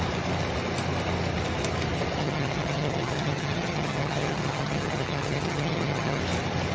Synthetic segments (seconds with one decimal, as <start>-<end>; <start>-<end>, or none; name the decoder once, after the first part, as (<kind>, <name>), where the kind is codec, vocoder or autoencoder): 2.2-6.2 (vocoder, HiFi-GAN)